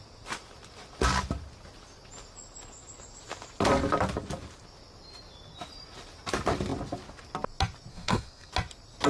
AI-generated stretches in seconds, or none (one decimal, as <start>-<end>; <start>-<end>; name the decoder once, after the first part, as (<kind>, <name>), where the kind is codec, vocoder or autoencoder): 7.9-8.5 (codec, SNAC)